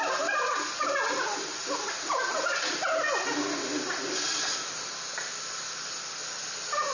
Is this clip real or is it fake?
real